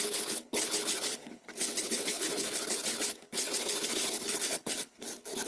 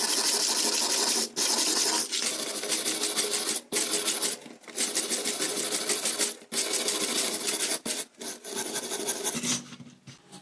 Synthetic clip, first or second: first